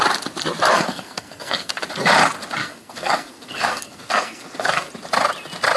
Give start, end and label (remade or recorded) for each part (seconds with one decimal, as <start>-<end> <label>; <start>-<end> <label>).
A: 0.0-0.7 recorded; 0.7-1.7 remade; 1.7-2.6 recorded; 2.6-4.9 remade; 4.9-5.8 recorded